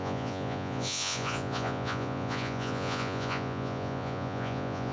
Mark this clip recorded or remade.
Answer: remade